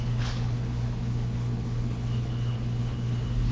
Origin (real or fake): fake